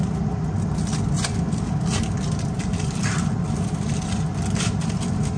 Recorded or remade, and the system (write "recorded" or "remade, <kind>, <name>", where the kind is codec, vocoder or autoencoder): recorded